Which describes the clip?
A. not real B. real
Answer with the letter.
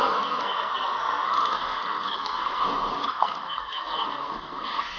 A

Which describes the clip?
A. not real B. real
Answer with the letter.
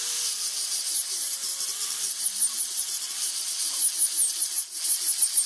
B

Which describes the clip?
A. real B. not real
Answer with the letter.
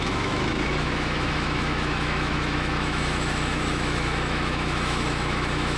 B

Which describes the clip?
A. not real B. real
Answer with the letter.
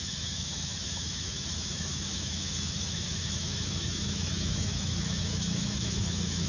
A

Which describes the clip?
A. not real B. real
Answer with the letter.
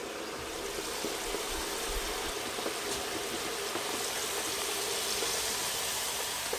B